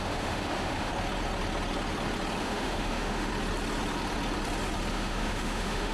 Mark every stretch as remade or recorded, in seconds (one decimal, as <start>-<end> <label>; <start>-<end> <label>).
0.0-0.9 remade; 0.9-2.4 recorded; 2.4-3.3 remade; 3.3-4.9 recorded; 4.9-5.9 remade